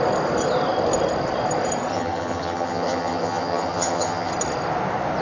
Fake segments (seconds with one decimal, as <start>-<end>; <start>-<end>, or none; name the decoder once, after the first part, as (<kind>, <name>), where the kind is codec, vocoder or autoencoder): 1.9-4.3 (vocoder, HiFi-GAN)